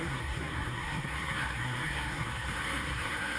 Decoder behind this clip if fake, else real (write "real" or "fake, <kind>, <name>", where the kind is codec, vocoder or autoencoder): fake, codec, SNAC